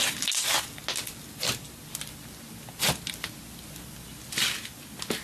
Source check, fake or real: real